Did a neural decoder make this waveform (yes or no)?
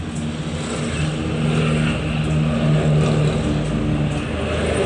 no